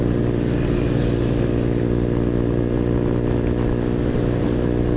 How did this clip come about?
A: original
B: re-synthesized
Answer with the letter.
A